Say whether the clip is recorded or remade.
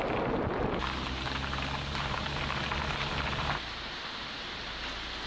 recorded